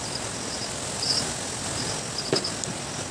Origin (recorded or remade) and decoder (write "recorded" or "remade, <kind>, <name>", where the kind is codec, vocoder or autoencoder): recorded